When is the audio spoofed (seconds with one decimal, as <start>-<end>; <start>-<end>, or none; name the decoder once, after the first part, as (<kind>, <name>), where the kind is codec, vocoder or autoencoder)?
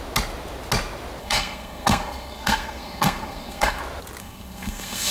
1.2-3.8 (codec, SNAC); 4.2-5.1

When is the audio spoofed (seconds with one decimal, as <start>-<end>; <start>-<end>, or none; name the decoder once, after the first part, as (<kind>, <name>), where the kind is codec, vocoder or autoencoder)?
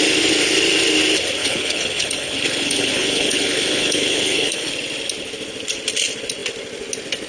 1.4-4.7 (codec, HILCodec)